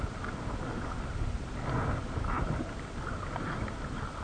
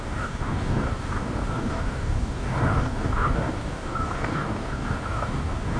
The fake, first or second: second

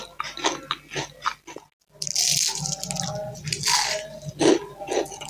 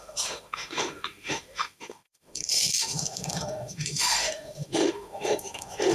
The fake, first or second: second